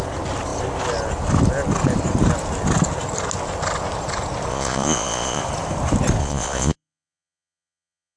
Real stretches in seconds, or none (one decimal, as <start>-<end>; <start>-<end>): 0.0-4.5; 5.4-6.2